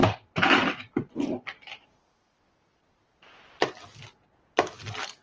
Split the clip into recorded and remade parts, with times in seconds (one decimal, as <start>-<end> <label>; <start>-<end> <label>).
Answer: 0.0-3.1 remade; 3.1-5.2 recorded